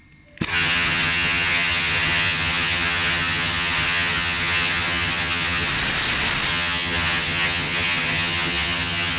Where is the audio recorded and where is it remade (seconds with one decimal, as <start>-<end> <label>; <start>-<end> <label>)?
0.0-0.5 recorded; 0.5-5.7 remade; 5.7-6.5 recorded; 6.5-9.2 remade